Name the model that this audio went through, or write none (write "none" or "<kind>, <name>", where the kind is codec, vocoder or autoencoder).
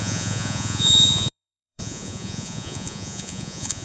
vocoder, Vocos